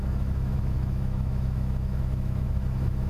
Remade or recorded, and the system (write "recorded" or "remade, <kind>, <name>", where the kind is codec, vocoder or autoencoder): remade, autoencoder, DAC-VAE